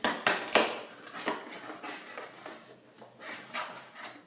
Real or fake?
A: real